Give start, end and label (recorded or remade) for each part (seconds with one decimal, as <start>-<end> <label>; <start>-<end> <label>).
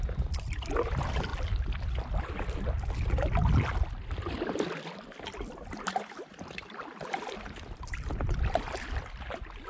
0.0-1.3 remade; 1.3-3.8 recorded; 3.8-9.7 remade